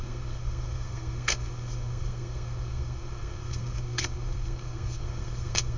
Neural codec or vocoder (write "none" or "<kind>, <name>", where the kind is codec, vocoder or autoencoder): codec, SNAC